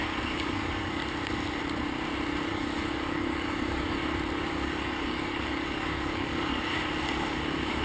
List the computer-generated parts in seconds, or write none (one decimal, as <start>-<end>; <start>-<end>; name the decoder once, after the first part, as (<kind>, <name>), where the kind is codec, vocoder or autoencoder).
0.0-1.0 (codec, DAC); 2.5-4.0; 4.5-6.7; 7.2-7.8